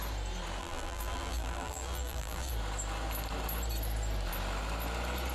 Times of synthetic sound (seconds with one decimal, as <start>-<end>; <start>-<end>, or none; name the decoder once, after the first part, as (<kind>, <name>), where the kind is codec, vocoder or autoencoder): 0.6-2.5 (vocoder, BigVGAN v2)